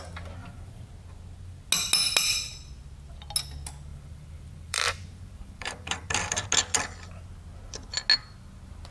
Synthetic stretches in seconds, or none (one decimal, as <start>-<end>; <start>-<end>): 0.4-0.9; 3.9-6.5